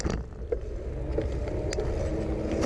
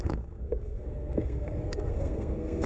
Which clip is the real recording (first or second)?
first